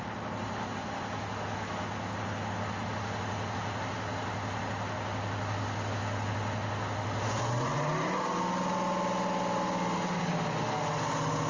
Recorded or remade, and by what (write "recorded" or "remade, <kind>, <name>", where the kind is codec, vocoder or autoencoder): recorded